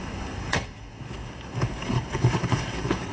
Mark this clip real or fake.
fake